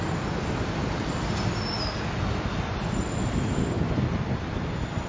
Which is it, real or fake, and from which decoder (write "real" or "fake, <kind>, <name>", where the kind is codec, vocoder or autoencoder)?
real